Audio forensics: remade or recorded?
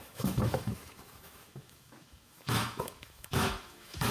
remade